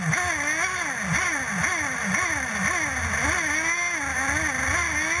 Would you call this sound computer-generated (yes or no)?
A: no